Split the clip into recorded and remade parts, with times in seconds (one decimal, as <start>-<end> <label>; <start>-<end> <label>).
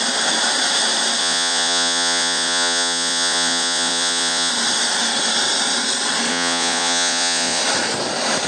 0.0-1.2 recorded; 1.2-4.5 remade; 4.5-6.3 recorded; 6.3-7.6 remade; 7.6-8.5 recorded